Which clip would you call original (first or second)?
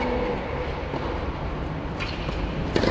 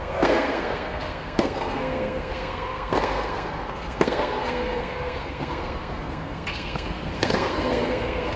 first